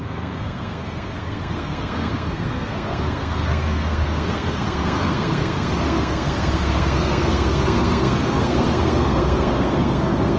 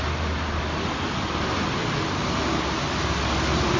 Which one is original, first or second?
second